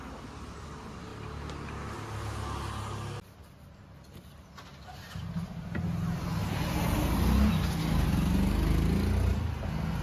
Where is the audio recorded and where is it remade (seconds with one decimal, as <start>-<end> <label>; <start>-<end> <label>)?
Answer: 0.0-10.0 recorded